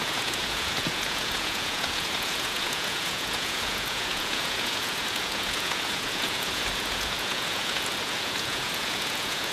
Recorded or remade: remade